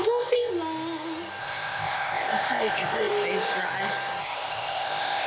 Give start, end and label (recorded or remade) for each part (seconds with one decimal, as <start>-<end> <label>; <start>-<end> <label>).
0.0-0.5 remade; 0.5-1.4 recorded; 1.4-3.1 remade; 3.1-4.2 recorded; 4.2-5.3 remade